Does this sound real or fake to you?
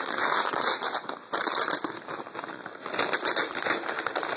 real